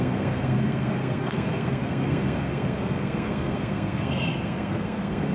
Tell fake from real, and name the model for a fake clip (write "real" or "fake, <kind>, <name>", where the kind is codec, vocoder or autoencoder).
fake, codec, SNAC